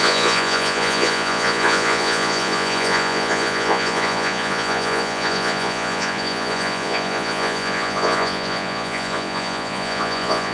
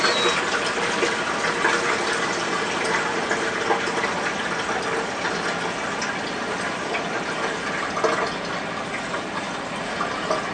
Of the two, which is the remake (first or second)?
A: first